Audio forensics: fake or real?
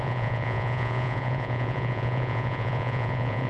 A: fake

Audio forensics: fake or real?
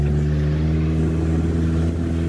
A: real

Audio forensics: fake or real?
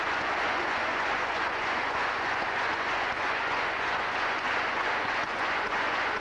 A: fake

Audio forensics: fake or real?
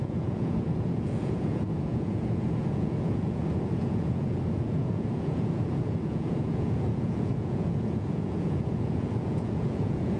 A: fake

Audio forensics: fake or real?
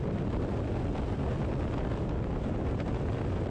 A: real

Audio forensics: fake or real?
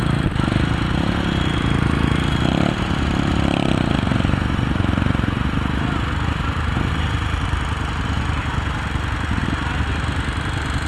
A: real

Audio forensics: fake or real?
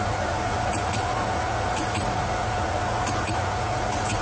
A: fake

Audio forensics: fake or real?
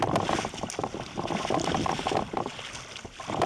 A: real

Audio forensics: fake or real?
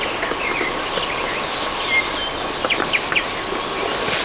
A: real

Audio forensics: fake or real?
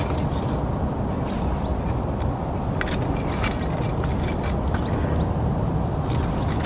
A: real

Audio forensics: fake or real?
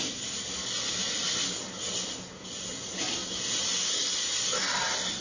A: real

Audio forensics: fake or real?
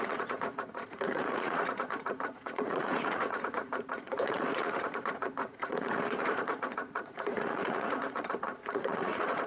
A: fake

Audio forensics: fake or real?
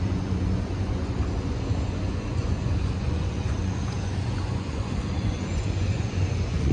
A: fake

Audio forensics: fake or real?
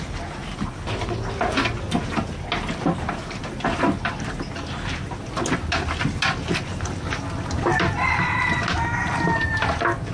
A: real